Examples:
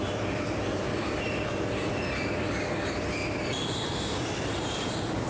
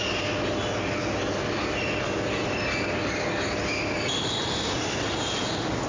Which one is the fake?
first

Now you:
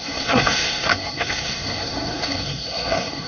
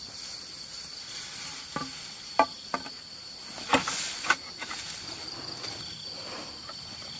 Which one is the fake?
first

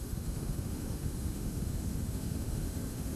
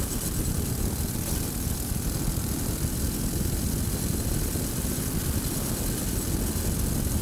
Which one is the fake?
first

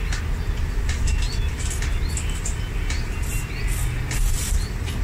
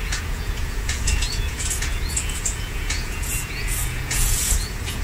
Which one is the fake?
second